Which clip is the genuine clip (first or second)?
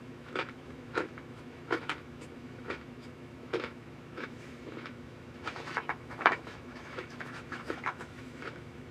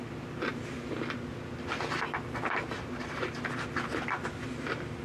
second